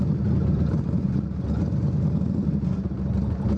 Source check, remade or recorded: recorded